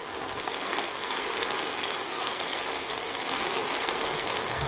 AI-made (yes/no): yes